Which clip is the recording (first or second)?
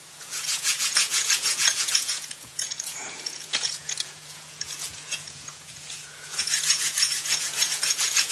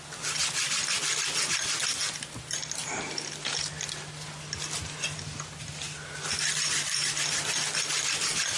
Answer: second